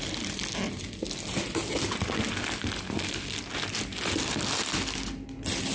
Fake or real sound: real